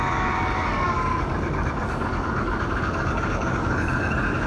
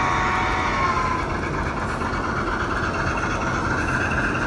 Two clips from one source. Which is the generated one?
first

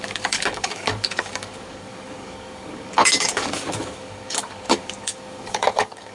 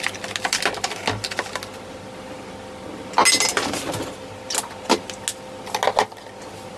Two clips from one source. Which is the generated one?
first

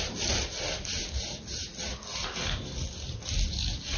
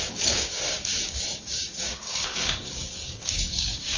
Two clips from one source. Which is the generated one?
second